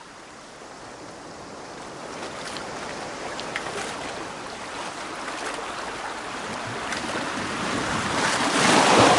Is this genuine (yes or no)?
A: yes